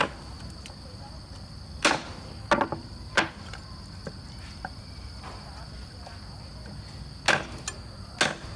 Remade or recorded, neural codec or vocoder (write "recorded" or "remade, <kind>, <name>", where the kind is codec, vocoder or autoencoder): recorded